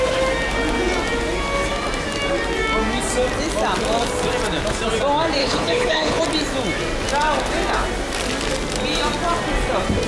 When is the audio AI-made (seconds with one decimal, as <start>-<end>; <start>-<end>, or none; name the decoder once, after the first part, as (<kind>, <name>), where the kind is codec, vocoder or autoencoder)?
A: 5.4-6.2 (codec, HILCodec)